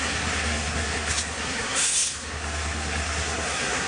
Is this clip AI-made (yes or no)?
yes